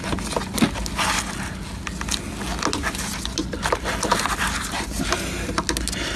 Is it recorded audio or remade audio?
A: recorded